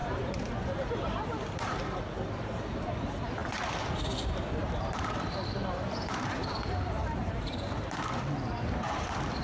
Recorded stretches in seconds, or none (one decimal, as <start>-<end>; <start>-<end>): 3.0-3.4; 3.9-4.6; 9.0-9.4